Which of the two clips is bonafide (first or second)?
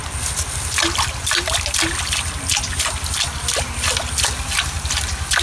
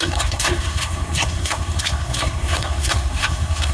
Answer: first